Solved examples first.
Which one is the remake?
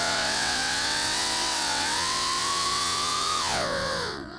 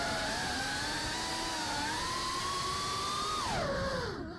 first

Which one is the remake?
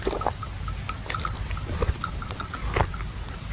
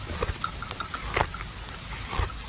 first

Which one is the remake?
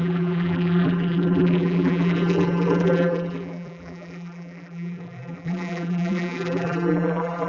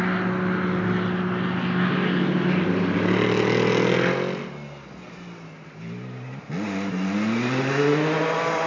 first